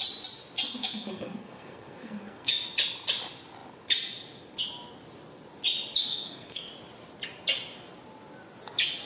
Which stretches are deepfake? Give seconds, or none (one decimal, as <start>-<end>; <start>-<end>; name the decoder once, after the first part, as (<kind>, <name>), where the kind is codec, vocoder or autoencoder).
0.8-2.5 (codec, SNAC); 6.0-6.7